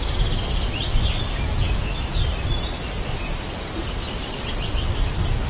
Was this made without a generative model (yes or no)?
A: yes